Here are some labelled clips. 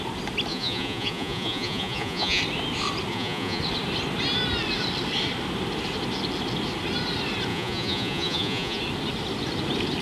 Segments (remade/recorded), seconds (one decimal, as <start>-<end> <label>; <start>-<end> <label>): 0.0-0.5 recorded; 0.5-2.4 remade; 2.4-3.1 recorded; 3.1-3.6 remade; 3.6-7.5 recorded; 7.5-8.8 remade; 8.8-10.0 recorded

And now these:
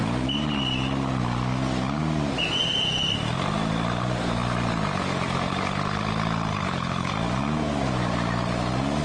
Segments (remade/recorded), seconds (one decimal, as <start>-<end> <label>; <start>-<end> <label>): 0.0-6.5 recorded; 6.5-7.1 remade; 7.1-9.0 recorded

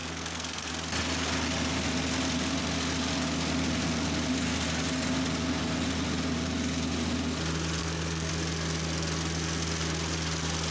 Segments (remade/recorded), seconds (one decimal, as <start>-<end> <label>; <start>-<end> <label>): 0.0-0.7 remade; 0.7-7.8 recorded; 7.8-8.3 remade; 8.3-10.7 recorded

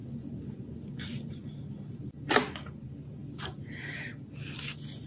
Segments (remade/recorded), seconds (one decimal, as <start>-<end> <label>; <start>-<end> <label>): 0.0-5.1 recorded

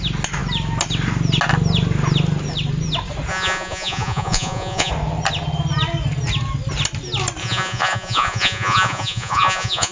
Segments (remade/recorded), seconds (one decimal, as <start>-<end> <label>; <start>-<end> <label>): 0.0-3.3 recorded; 3.3-4.9 remade; 4.9-7.4 recorded; 7.4-9.9 remade

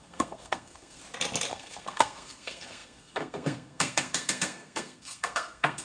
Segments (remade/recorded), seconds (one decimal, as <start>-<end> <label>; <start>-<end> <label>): 0.0-1.0 remade; 1.0-1.5 recorded; 1.5-5.8 remade